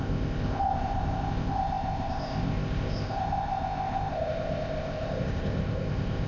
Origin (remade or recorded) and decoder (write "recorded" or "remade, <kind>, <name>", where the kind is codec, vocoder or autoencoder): remade, codec, ZipCodec